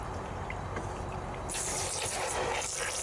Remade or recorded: recorded